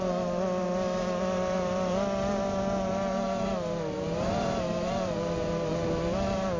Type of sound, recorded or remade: remade